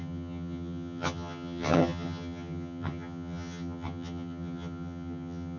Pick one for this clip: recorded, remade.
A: remade